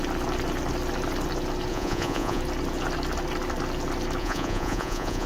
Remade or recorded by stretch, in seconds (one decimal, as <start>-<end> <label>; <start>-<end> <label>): 0.0-1.7 recorded; 1.7-2.4 remade; 2.4-4.2 recorded; 4.2-5.3 remade